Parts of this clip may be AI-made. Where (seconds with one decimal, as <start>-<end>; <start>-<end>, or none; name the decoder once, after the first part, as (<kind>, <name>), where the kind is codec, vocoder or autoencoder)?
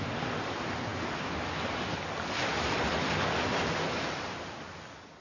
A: none